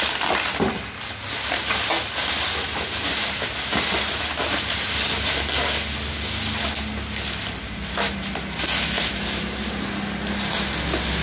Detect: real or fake real